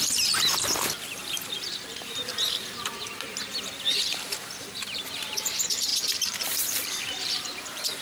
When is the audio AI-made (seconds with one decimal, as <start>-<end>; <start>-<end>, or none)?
0.0-8.0